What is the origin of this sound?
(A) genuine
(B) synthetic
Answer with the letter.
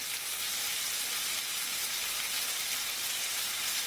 A